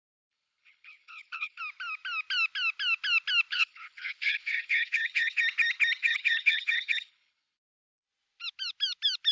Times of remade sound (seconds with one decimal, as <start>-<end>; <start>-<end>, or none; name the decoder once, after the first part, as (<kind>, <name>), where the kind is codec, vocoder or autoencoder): 0.0-1.6 (codec, HILCodec); 3.5-5.4; 6.0-7.7

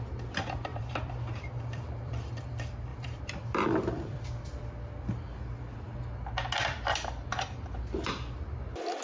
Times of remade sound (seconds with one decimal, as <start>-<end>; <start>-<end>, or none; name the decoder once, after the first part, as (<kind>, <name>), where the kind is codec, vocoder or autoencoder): 0.7-2.5 (vocoder, BigVGAN v2); 2.9-4.6

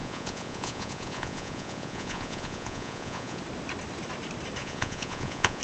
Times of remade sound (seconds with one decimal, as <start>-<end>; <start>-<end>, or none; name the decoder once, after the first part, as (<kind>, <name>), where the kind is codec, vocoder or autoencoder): 0.0-3.4 (vocoder, Vocos); 4.6-5.6

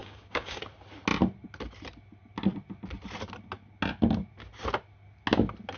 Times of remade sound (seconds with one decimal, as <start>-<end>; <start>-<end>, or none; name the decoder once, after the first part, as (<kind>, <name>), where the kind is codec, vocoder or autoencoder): 0.0-0.6 (codec, DAC)